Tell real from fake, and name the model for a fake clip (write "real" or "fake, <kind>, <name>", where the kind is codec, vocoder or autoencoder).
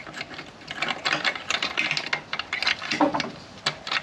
real